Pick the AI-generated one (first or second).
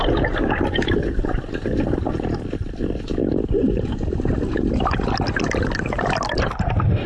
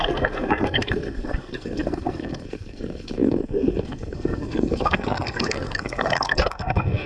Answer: second